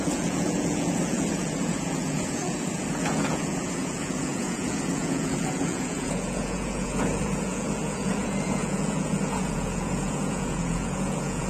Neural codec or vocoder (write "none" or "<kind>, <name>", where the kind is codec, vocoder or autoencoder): vocoder, Vocos